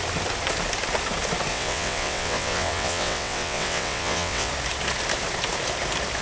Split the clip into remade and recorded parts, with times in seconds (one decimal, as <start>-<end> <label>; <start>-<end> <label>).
0.0-1.5 recorded; 1.5-4.5 remade; 4.5-6.2 recorded